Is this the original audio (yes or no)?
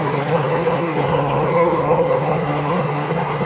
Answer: no